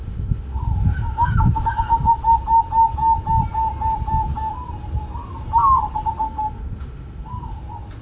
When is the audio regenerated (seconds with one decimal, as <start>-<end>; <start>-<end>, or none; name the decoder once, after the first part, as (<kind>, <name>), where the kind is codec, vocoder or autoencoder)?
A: 0.0-2.1 (autoencoder, DAC-VAE); 6.2-7.6